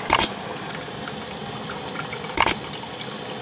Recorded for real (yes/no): yes